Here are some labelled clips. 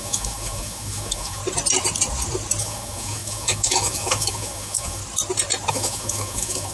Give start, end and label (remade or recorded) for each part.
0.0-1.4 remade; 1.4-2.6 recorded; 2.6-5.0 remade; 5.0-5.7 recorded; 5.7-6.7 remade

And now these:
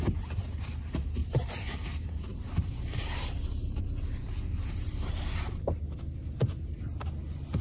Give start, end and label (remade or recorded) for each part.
0.0-1.2 recorded; 1.2-5.8 remade; 5.8-7.6 recorded

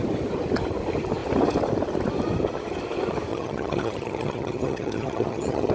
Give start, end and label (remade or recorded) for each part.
0.0-3.3 recorded; 3.3-5.7 remade

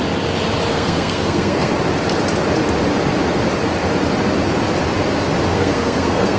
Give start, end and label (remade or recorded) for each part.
0.0-0.7 recorded; 0.7-1.7 remade; 1.7-5.5 recorded; 5.5-6.4 remade

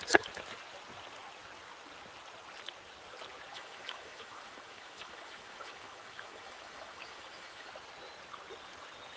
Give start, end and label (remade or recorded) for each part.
0.0-3.5 recorded; 3.5-7.7 remade; 7.7-9.2 recorded

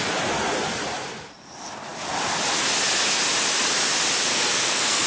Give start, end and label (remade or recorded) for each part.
0.0-4.3 recorded; 4.3-5.1 remade

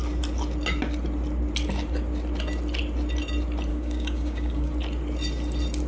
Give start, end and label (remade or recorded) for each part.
0.0-3.7 recorded; 3.7-4.7 remade; 4.7-5.9 recorded